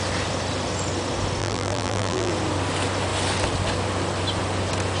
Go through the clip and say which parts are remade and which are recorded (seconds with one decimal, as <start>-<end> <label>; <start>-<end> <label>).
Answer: 0.0-1.4 recorded; 1.4-2.3 remade; 2.3-5.0 recorded

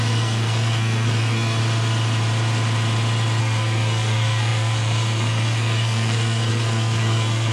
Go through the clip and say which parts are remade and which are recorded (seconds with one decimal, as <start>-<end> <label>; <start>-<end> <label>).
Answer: 0.0-1.6 remade; 1.6-3.4 recorded; 3.4-7.5 remade

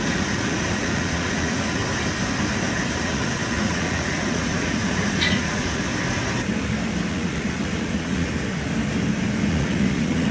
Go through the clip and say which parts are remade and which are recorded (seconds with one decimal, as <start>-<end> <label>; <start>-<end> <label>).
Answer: 0.0-1.8 remade; 1.8-3.0 recorded; 3.0-5.9 remade; 5.9-7.1 recorded; 7.1-8.3 remade; 8.3-9.5 recorded; 9.5-10.3 remade

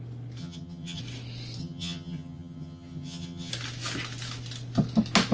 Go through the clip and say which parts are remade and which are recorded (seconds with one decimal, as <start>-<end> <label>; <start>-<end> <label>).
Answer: 0.0-0.4 recorded; 0.4-1.0 remade; 1.0-1.6 recorded; 1.6-3.5 remade; 3.5-5.3 recorded

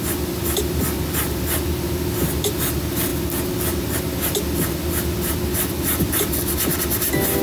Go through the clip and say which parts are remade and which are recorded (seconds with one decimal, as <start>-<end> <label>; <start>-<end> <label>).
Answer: 0.0-7.4 recorded

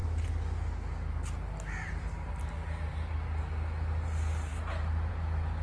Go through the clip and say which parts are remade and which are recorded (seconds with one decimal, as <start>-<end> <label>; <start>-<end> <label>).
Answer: 0.0-5.6 recorded

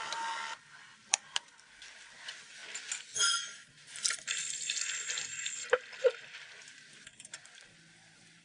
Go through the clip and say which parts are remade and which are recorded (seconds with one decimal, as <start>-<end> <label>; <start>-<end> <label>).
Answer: 0.0-2.6 remade; 2.6-6.9 recorded; 6.9-8.4 remade